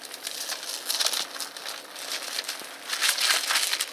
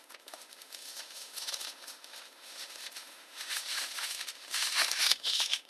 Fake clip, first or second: second